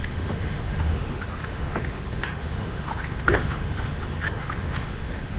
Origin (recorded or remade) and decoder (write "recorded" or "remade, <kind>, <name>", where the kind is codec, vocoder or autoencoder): remade, autoencoder, DAC-VAE